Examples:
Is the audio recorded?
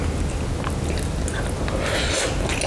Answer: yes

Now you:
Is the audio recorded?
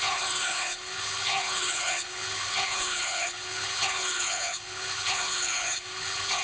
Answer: no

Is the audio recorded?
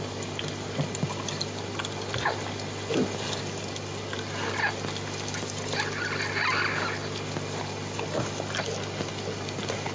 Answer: yes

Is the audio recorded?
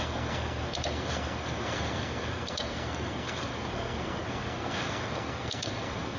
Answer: no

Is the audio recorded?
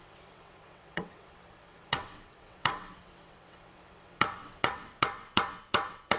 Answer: no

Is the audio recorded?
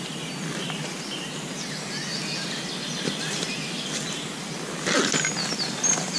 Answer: yes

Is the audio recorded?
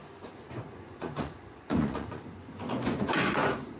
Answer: no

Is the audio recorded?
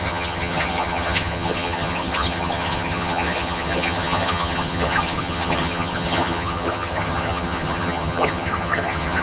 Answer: no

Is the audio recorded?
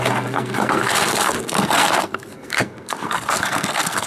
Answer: no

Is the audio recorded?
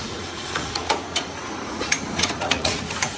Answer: no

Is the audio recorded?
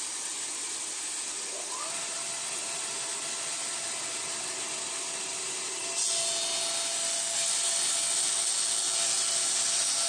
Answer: yes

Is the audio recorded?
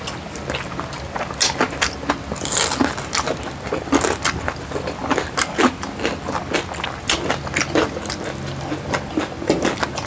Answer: yes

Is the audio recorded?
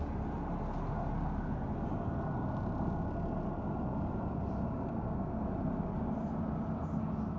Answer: yes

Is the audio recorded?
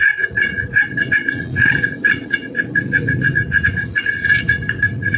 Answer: no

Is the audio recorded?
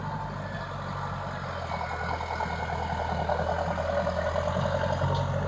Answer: yes